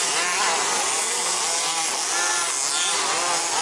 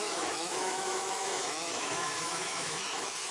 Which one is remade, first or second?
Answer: second